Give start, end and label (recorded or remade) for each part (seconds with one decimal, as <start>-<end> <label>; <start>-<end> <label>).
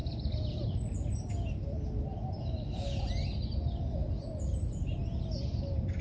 0.0-6.0 recorded